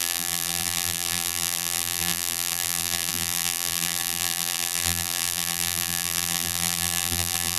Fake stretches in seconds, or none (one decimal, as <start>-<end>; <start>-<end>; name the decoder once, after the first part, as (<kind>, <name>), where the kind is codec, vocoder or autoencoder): 0.0-7.6 (vocoder, BigVGAN v2)